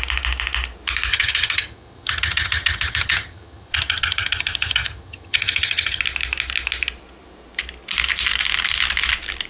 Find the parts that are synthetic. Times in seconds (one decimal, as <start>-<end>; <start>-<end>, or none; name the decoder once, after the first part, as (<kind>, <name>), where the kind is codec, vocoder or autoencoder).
1.1-6.0 (vocoder, HiFi-GAN)